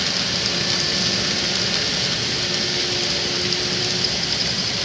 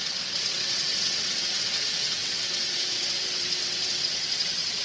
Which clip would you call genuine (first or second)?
first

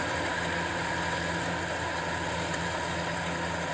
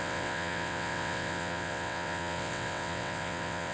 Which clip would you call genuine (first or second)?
first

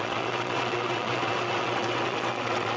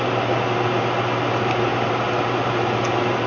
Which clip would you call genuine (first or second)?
second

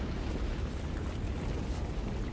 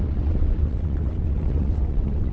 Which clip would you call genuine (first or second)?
first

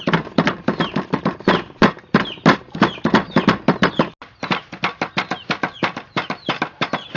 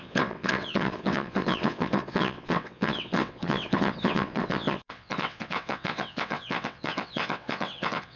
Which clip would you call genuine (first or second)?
first